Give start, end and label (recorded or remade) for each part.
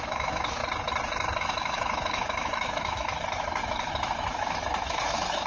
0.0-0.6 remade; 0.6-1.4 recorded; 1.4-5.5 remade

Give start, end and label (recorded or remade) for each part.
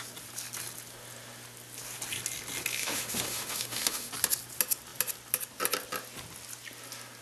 0.0-2.8 recorded; 2.8-4.1 remade; 4.1-7.2 recorded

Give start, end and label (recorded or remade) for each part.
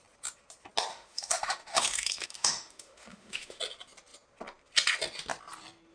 0.0-0.9 recorded; 0.9-3.6 remade; 3.6-5.9 recorded